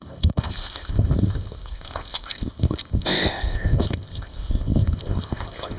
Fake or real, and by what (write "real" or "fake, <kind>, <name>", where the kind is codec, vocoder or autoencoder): fake, codec, ZipCodec